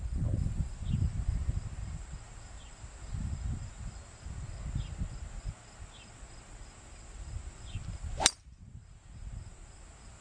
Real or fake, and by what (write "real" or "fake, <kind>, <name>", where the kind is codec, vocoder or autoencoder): real